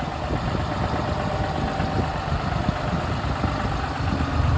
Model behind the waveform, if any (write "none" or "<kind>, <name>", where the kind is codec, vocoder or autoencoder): none